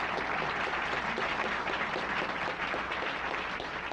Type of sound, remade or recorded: recorded